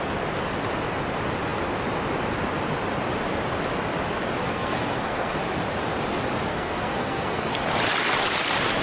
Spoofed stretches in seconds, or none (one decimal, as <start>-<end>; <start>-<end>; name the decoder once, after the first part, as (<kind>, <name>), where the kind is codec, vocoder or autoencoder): 4.4-5.4 (codec, SNAC); 6.5-7.5